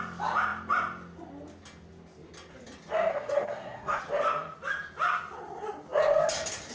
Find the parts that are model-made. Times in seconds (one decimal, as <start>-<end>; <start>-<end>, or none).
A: 3.1-4.0

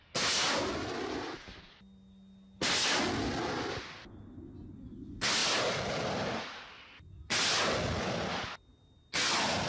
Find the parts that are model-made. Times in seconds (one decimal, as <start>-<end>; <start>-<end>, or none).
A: none

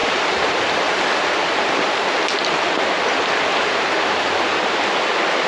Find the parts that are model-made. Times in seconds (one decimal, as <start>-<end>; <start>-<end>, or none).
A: 3.5-4.8